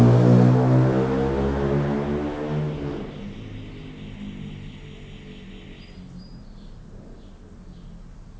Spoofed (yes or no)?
no